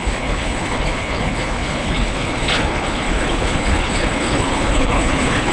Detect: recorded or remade remade